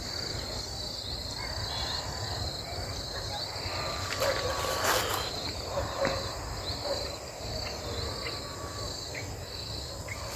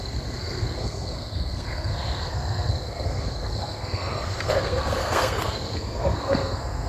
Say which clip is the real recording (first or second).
first